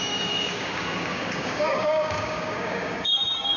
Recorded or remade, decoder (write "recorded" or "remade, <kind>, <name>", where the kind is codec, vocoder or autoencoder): remade, codec, DAC